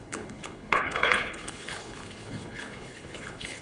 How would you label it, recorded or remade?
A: remade